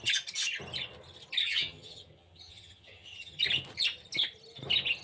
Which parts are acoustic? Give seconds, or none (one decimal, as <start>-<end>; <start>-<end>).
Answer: 0.0-1.4; 3.4-5.0